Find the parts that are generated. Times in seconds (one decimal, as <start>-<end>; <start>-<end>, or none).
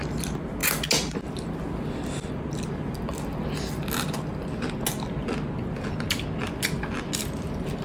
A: none